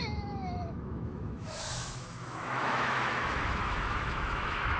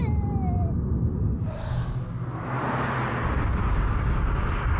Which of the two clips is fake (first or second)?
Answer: first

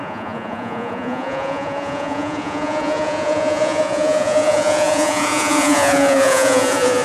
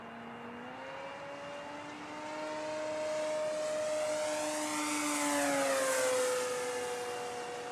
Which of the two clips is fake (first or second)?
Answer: first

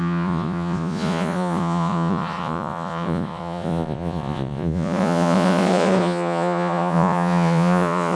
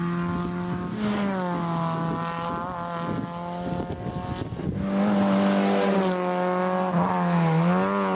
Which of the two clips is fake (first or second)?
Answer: first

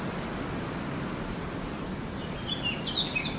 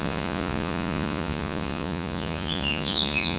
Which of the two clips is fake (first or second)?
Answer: second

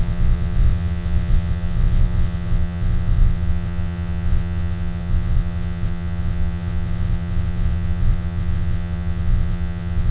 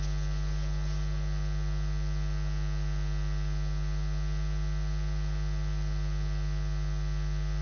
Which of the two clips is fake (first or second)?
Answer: first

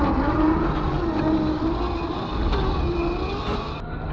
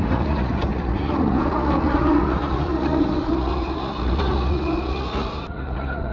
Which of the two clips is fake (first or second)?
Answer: second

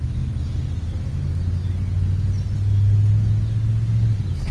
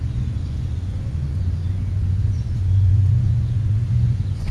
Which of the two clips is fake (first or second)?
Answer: second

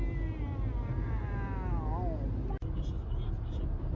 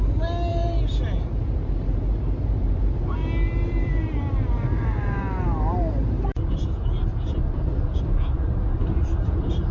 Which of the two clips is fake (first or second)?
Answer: second